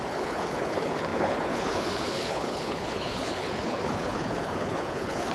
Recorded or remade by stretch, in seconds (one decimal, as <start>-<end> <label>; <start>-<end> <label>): 0.0-5.3 remade